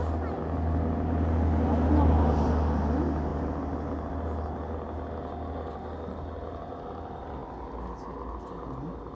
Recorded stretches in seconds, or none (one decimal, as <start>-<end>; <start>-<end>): 0.0-9.1